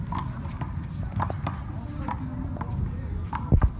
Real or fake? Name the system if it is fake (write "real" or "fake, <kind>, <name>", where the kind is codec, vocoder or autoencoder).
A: real